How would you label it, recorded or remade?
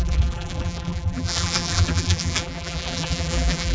remade